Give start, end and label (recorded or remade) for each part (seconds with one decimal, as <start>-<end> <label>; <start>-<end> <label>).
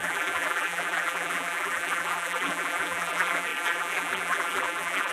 0.0-5.1 remade